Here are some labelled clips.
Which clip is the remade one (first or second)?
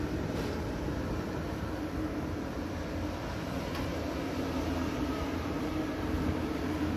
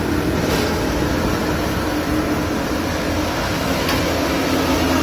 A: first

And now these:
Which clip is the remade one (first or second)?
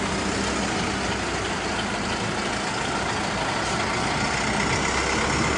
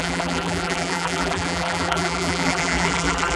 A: second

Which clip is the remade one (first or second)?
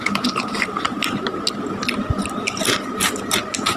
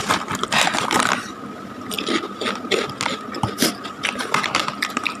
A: first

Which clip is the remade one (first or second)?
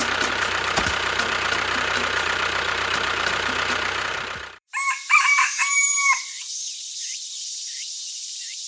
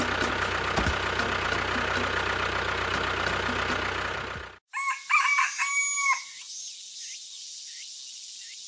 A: first